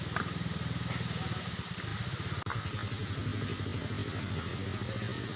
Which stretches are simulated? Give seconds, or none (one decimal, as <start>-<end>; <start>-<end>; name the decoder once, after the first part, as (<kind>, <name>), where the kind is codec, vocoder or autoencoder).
none